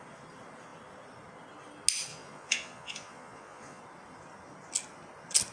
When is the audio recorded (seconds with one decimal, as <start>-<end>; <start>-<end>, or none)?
0.0-2.1; 3.8-5.5